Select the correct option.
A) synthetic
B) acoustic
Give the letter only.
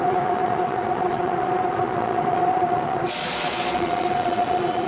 A